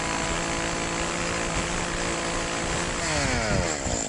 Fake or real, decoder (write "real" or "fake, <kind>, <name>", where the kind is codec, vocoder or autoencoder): real